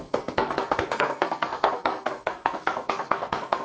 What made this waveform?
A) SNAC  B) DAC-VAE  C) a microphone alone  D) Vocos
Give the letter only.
A